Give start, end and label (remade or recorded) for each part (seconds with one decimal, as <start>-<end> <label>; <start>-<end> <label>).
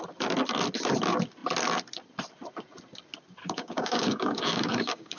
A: 0.0-3.4 recorded; 3.4-5.2 remade